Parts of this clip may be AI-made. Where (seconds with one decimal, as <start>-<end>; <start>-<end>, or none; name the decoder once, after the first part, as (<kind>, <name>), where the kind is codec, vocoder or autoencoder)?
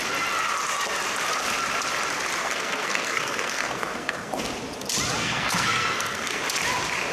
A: 2.4-4.4 (codec, SNAC); 5.2-6.4